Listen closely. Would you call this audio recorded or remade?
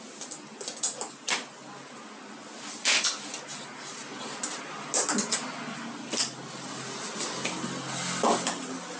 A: recorded